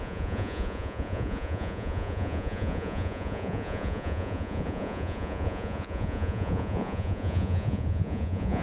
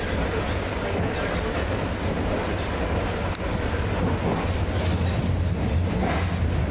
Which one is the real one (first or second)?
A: second